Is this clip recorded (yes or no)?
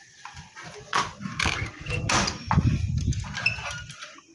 yes